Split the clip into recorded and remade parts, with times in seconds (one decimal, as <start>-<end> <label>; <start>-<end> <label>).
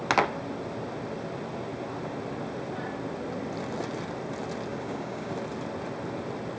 0.0-4.7 recorded; 4.7-5.3 remade; 5.3-6.6 recorded